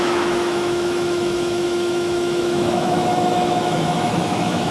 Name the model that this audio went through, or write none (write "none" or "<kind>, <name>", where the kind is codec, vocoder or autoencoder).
autoencoder, DAC-VAE